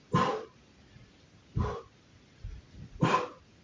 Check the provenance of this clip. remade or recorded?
recorded